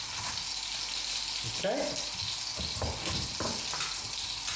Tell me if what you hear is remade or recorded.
recorded